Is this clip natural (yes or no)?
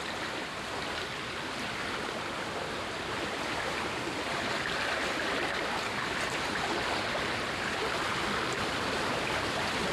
yes